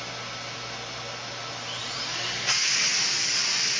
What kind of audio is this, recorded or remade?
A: recorded